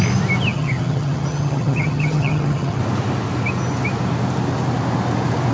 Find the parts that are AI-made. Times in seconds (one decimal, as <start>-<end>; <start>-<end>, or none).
0.5-2.8